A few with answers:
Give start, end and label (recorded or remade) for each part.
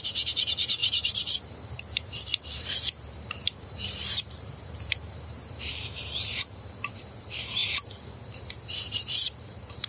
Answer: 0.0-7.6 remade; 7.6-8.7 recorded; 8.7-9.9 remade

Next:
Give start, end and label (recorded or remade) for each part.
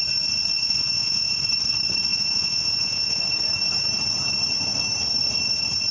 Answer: 0.0-0.6 recorded; 0.6-1.4 remade; 1.4-2.1 recorded; 2.1-3.2 remade; 3.2-5.9 recorded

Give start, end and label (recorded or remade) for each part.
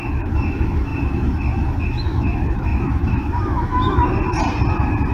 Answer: 0.0-4.0 remade; 4.0-5.1 recorded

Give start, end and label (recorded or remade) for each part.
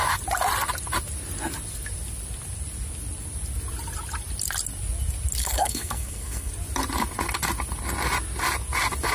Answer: 0.0-5.4 recorded; 5.4-6.5 remade; 6.5-9.1 recorded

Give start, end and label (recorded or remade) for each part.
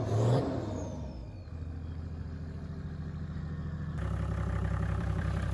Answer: 0.0-1.2 remade; 1.2-4.5 recorded; 4.5-5.5 remade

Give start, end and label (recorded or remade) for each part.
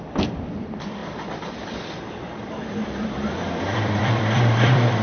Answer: 0.0-5.0 remade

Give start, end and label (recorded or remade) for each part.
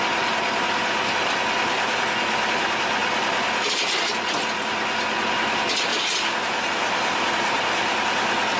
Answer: 0.0-1.2 recorded; 1.2-2.0 remade; 2.0-8.6 recorded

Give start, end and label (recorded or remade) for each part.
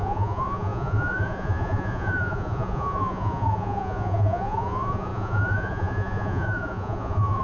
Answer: 0.0-7.4 remade